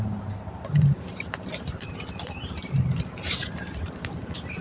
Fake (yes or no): yes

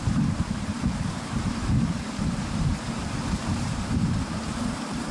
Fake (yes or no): yes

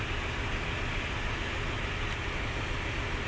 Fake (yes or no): no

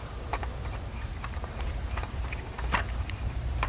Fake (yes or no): yes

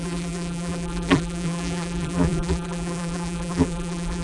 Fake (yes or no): yes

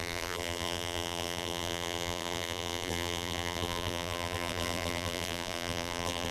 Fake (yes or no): yes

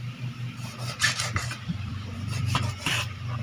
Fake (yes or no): yes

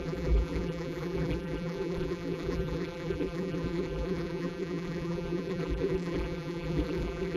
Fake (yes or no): yes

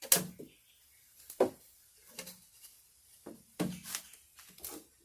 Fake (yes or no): no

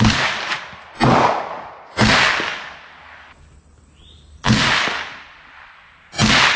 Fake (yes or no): no